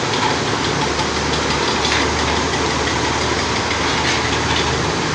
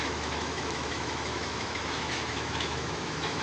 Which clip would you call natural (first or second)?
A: first